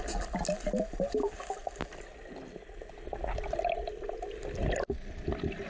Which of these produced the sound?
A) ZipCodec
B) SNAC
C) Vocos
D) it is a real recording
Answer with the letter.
D